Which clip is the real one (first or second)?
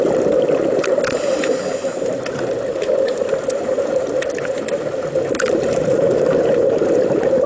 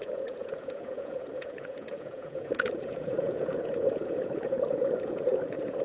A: first